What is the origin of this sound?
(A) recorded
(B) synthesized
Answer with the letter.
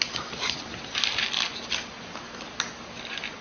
A